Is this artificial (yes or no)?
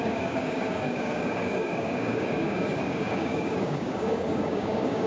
yes